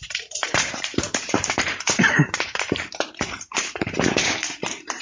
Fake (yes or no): yes